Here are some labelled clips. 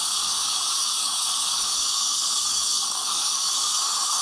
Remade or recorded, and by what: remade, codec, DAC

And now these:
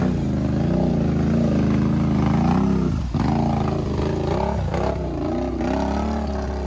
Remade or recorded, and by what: recorded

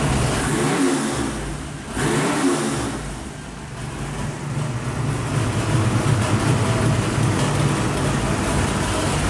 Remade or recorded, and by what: recorded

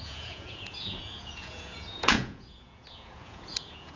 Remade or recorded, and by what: remade, vocoder, Vocos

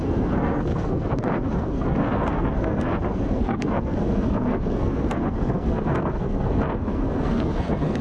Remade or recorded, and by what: remade, codec, SNAC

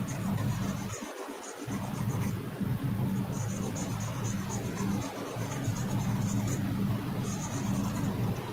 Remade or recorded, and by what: recorded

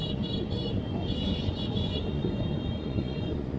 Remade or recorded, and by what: remade, vocoder, Vocos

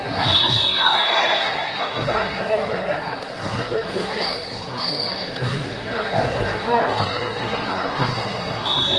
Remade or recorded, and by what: remade, codec, SNAC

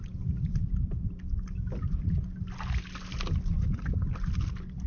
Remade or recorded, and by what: recorded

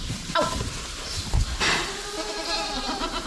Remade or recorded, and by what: remade, vocoder, BigVGAN v2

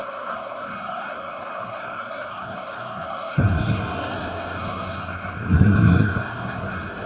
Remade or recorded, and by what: remade, codec, SNAC